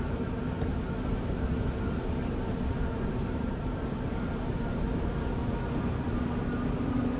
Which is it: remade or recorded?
recorded